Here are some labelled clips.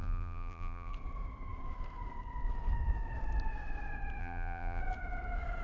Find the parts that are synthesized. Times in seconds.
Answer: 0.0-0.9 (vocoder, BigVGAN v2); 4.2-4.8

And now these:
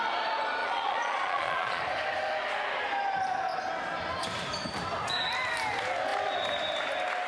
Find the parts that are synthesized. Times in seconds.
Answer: 0.6-1.8 (vocoder, Vocos)